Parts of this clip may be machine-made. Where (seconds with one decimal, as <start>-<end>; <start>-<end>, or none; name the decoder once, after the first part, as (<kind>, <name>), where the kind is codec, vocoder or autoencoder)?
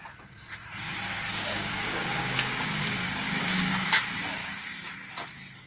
1.3-4.0 (codec, DAC); 4.4-4.9